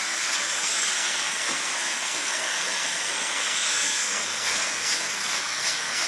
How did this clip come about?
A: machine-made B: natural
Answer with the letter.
A